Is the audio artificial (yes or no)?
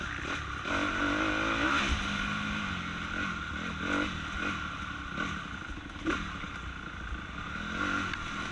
no